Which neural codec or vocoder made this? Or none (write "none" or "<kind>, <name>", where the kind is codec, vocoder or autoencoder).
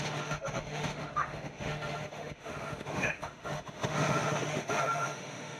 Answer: autoencoder, DAC-VAE